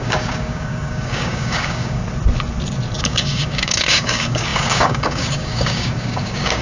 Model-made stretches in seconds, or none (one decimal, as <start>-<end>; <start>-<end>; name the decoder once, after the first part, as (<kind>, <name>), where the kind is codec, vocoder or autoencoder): 0.0-2.0 (codec, DAC); 3.0-6.6